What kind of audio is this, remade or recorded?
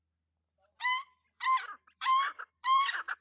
remade